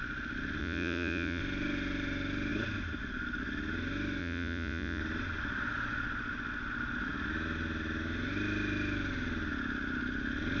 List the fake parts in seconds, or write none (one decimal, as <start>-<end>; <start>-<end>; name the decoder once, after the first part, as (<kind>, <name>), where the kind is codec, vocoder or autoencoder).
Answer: 0.6-1.4 (vocoder, Vocos); 4.2-5.0